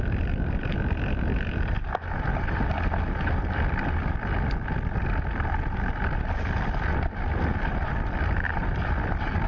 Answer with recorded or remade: recorded